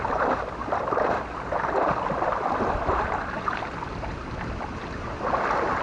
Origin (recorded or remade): remade